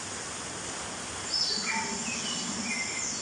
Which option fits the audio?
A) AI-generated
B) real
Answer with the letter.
B